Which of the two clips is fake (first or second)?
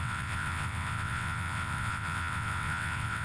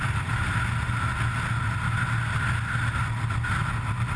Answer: first